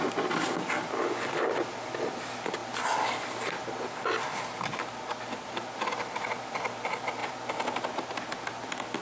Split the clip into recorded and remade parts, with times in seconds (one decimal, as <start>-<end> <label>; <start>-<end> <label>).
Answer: 0.0-9.0 recorded

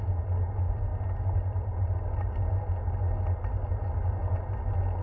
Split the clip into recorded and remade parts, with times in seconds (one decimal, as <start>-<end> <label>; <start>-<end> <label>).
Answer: 0.0-5.0 recorded

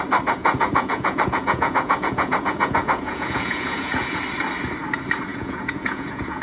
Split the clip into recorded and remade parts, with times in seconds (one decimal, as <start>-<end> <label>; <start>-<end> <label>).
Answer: 0.0-0.4 recorded; 0.4-4.2 remade; 4.2-5.3 recorded; 5.3-6.4 remade

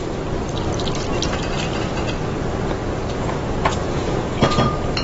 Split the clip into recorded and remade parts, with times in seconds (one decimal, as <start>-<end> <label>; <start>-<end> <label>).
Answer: 0.0-3.8 recorded; 3.8-4.5 remade; 4.5-5.0 recorded

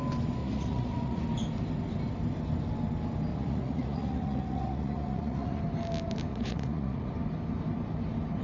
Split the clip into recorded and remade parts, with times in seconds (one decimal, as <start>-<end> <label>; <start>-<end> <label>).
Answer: 0.0-0.4 recorded; 0.4-1.2 remade; 1.2-3.3 recorded; 3.3-5.6 remade; 5.6-6.3 recorded; 6.3-7.1 remade; 7.1-8.4 recorded

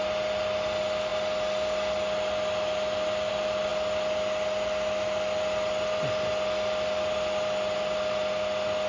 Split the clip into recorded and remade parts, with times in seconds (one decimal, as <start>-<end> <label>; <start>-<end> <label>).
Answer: 0.0-8.9 recorded

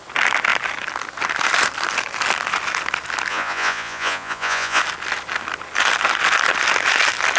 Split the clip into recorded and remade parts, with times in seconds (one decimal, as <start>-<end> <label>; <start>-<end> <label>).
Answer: 0.0-3.3 recorded; 3.3-4.8 remade; 4.8-7.4 recorded